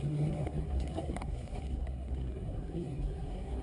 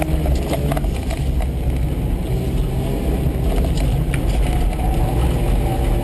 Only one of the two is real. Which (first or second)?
second